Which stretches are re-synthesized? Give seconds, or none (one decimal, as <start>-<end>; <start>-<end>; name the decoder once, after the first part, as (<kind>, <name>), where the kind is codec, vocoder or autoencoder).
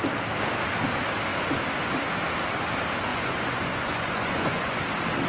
3.1-4.8 (vocoder, Vocos)